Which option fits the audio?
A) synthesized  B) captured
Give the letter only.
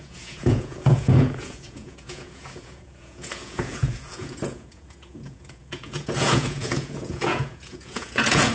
A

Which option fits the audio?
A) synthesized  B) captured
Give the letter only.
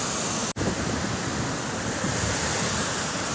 B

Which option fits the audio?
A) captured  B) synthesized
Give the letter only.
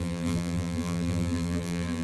B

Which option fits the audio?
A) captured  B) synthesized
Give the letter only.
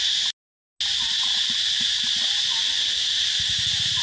A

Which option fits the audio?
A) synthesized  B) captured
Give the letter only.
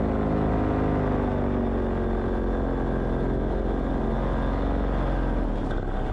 B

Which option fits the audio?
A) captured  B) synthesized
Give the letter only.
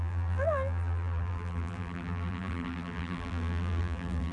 B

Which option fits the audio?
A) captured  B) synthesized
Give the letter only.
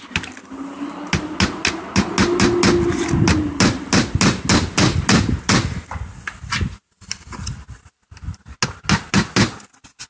A